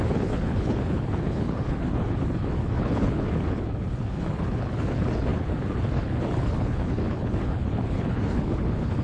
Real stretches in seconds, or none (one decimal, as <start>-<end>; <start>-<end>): none